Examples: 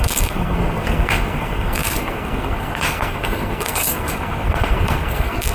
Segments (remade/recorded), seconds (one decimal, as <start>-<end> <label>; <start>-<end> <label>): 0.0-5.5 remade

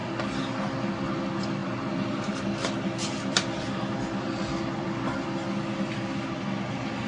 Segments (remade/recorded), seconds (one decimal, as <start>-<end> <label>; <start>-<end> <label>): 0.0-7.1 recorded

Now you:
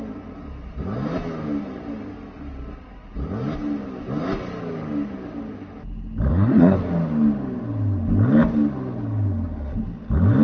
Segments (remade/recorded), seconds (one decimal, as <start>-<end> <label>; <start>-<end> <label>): 0.0-6.3 recorded; 6.3-6.8 remade; 6.8-10.4 recorded